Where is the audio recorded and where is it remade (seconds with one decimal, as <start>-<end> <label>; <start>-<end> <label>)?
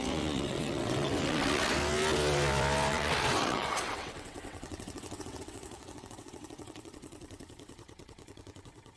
0.0-1.7 remade; 1.7-2.9 recorded; 2.9-9.0 remade